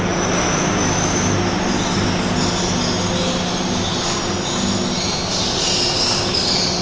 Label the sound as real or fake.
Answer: real